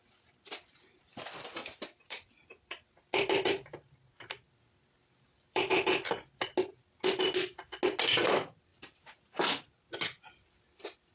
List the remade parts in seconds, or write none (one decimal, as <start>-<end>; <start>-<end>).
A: 0.0-2.5; 5.0-5.6; 8.7-9.5

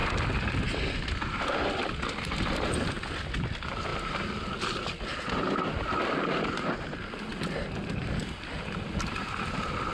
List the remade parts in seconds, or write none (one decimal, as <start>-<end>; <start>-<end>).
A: none

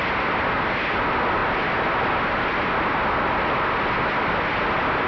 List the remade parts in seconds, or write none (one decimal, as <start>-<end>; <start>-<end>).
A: none

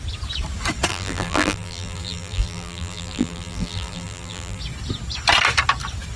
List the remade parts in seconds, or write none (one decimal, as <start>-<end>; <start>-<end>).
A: 0.9-4.6